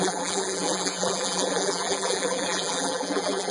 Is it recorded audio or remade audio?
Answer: remade